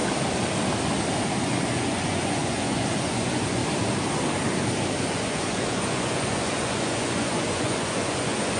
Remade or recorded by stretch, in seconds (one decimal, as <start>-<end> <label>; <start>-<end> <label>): 0.0-1.4 recorded; 1.4-3.6 remade; 3.6-5.0 recorded; 5.0-8.6 remade